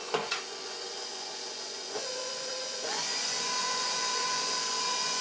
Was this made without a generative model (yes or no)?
no